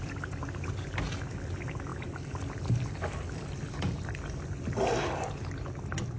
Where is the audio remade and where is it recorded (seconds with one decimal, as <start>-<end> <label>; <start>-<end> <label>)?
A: 0.0-1.9 recorded; 1.9-4.4 remade; 4.4-6.2 recorded